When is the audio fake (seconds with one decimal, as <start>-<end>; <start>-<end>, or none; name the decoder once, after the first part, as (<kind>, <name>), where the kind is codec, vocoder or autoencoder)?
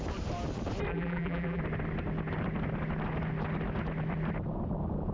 0.9-1.6 (vocoder, BigVGAN v2)